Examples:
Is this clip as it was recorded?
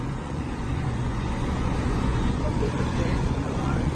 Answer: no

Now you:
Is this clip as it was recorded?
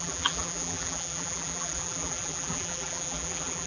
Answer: no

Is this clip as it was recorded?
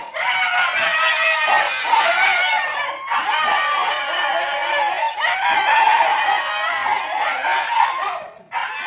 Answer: yes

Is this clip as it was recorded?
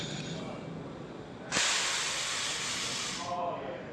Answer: yes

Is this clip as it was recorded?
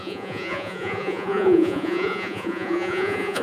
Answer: no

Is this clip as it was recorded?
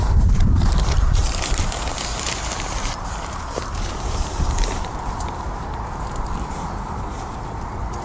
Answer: no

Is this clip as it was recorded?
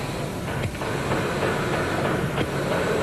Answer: yes